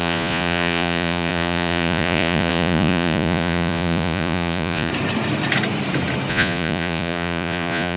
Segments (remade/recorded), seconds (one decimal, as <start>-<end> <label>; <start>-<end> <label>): 0.0-4.9 remade; 4.9-6.3 recorded; 6.3-8.0 remade